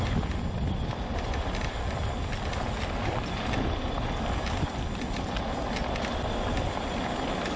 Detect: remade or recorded recorded